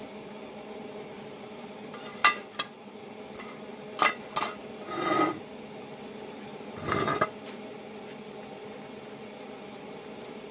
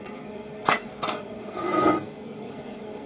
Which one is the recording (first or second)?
first